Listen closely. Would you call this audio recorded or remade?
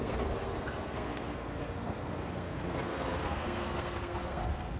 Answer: remade